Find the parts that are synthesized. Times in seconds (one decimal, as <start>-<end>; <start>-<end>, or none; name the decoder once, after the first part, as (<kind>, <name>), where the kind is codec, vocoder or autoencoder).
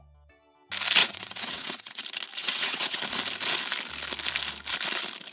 1.0-2.0 (vocoder, WaveNeXt); 2.4-3.0